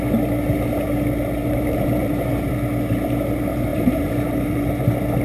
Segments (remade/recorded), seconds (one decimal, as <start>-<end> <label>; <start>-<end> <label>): 0.0-1.4 recorded; 1.4-2.5 remade; 2.5-3.7 recorded; 3.7-4.7 remade; 4.7-5.2 recorded